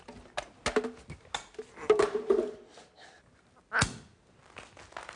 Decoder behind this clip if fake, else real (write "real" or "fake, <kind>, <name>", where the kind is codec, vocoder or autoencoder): real